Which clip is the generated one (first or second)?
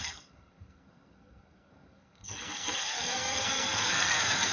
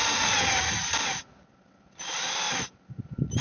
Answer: first